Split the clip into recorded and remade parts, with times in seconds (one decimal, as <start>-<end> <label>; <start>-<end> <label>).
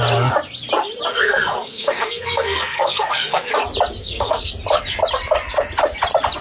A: 0.0-1.1 recorded; 1.1-3.5 remade; 3.5-4.0 recorded; 4.0-4.5 remade; 4.5-6.4 recorded